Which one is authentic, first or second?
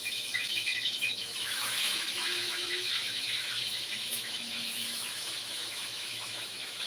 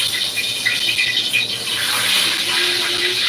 second